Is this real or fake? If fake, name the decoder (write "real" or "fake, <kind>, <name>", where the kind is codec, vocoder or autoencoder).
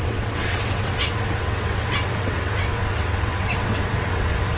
fake, vocoder, WaveNeXt